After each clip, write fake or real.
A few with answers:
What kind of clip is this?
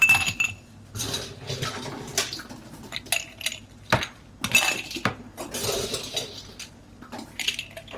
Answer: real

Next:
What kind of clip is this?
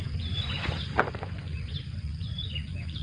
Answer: fake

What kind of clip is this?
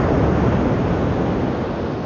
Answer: real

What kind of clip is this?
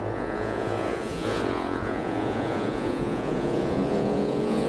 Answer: fake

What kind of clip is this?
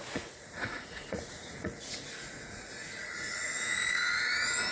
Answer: fake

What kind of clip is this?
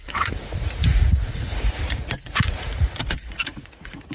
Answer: fake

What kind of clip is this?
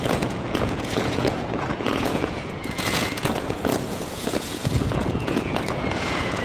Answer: fake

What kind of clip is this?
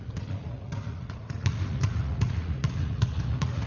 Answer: fake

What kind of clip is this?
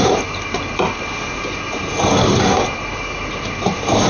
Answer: real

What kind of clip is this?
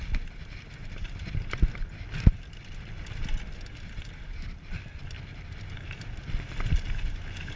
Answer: real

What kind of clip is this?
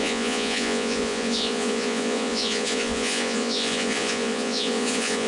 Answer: fake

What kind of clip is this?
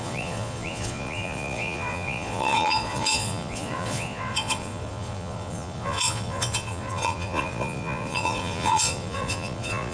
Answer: fake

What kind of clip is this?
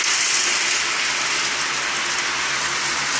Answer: real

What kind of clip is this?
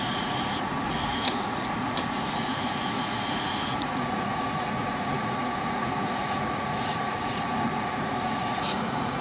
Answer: fake